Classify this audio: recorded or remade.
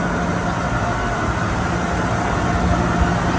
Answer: recorded